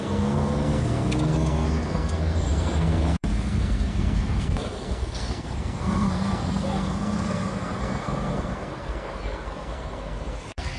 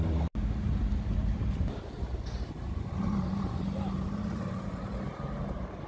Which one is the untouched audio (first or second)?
second